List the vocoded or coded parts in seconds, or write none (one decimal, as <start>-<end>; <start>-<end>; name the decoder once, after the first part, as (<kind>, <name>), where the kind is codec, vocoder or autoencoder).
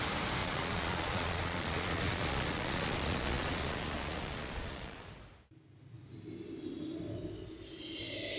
0.4-5.1 (vocoder, Vocos)